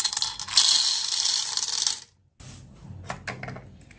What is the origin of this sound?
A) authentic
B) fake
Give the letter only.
A